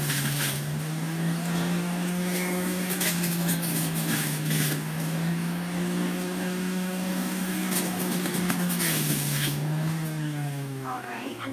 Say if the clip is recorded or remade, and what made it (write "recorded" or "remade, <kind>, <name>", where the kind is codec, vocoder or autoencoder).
remade, codec, DAC